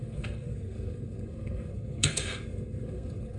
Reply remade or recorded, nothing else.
remade